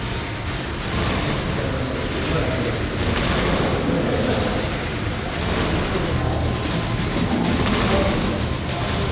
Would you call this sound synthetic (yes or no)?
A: no